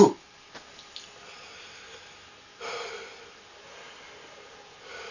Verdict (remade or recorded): recorded